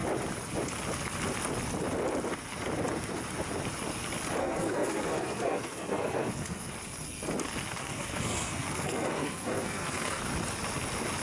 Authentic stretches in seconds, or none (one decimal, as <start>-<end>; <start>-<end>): 0.0-4.4; 6.7-7.8; 10.2-11.2